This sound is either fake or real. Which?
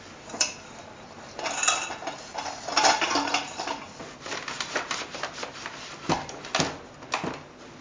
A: real